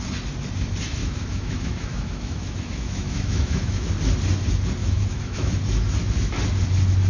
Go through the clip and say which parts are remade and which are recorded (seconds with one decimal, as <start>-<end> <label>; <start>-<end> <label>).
0.0-1.0 recorded; 1.0-3.9 remade; 3.9-4.8 recorded; 4.8-5.5 remade; 5.5-7.1 recorded